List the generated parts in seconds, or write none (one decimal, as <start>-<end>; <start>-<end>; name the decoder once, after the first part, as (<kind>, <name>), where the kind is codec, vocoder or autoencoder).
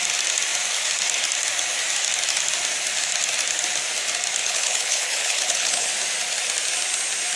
4.4-5.9 (codec, HILCodec)